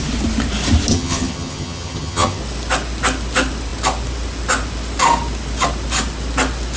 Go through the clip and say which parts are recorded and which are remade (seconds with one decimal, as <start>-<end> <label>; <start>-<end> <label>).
0.0-0.9 recorded; 0.9-2.4 remade; 2.4-6.8 recorded